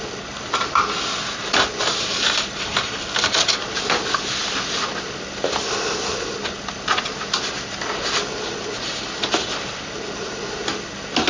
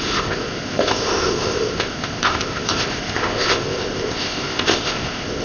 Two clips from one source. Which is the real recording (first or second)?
first